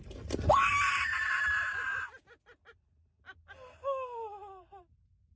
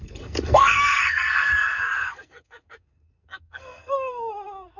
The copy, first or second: second